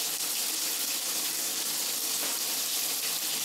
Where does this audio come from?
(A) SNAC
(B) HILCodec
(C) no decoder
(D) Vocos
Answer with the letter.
C